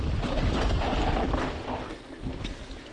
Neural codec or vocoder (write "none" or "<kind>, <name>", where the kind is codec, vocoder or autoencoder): none